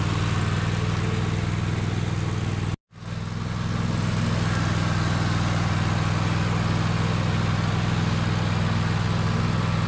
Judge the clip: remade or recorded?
recorded